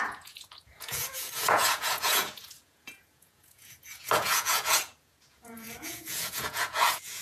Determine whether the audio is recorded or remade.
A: remade